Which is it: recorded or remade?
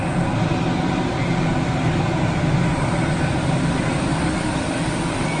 recorded